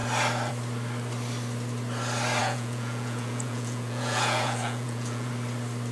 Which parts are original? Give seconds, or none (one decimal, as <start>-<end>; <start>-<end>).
0.0-2.4; 5.3-5.9